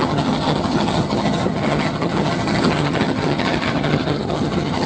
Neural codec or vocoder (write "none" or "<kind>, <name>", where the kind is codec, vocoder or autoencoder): vocoder, HiFi-GAN